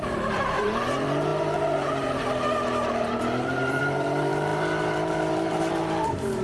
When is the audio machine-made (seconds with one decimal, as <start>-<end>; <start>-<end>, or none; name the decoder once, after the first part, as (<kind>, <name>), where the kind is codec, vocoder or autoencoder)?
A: 0.0-6.4 (vocoder, BigVGAN v2)